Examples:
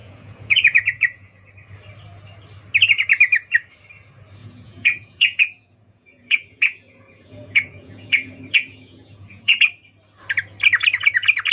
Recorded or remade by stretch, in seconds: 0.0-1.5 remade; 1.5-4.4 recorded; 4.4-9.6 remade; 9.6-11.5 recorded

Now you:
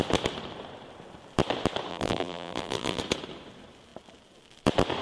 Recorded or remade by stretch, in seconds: 0.0-1.9 recorded; 1.9-3.0 remade; 3.0-5.0 recorded